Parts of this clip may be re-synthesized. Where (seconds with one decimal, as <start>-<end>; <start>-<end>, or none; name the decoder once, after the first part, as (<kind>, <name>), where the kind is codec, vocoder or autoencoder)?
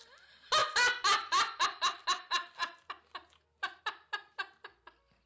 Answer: none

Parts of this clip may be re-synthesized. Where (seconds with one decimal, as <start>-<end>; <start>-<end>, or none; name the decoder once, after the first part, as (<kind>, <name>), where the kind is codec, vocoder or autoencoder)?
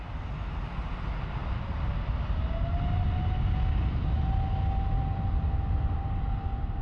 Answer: 1.4-1.9 (vocoder, BigVGAN v2)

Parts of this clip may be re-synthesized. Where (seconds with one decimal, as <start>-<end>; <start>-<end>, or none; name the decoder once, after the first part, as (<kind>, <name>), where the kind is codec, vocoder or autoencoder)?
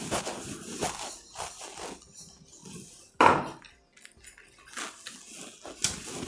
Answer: none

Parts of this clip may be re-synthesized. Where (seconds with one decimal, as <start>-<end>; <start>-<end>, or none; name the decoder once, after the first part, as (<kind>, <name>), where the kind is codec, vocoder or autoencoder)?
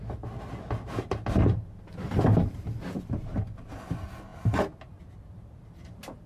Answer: none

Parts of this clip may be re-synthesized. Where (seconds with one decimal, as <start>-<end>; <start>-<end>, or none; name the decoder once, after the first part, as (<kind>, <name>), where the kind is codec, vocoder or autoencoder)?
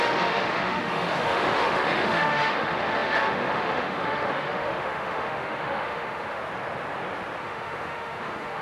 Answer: 0.0-6.4 (autoencoder, DAC-VAE); 7.4-8.6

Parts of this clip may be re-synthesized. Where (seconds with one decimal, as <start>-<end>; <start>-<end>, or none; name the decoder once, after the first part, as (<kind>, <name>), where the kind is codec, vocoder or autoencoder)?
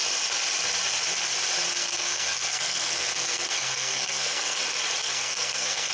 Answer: 1.8-4.6 (codec, SNAC); 5.0-5.9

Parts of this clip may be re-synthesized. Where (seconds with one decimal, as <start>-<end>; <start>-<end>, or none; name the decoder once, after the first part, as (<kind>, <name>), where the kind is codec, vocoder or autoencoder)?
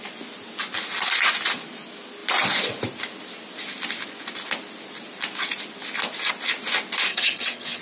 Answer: 7.1-7.8 (vocoder, HiFi-GAN)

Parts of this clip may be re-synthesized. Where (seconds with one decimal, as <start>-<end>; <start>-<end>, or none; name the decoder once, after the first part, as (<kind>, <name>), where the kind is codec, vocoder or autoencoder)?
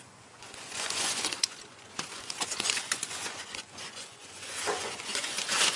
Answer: 0.0-5.8 (vocoder, Vocos)